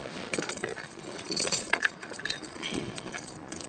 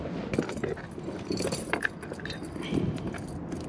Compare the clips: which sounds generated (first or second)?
first